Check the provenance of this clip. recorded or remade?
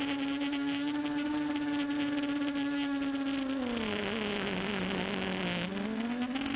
recorded